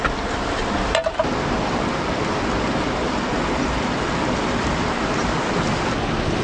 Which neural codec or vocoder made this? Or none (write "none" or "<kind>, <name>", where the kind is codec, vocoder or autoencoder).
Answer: none